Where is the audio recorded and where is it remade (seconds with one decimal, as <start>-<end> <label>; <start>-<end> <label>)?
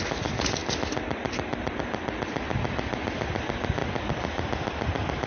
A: 0.0-5.3 recorded